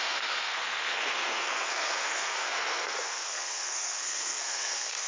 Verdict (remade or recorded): remade